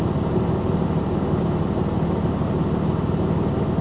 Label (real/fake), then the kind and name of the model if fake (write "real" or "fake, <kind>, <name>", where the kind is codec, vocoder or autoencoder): real